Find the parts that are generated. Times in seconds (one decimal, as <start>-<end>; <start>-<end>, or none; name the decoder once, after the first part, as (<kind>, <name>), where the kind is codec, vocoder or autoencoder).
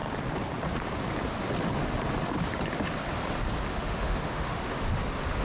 3.7-5.0 (autoencoder, DAC-VAE)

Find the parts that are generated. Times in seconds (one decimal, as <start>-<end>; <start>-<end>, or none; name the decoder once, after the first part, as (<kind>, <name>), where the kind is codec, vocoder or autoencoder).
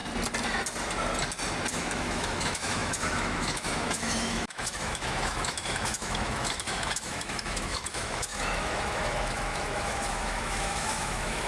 1.7-11.5 (autoencoder, DAC-VAE)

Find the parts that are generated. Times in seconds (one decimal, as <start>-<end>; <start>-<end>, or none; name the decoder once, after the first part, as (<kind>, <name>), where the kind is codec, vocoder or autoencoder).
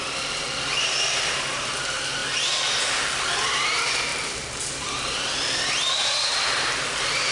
none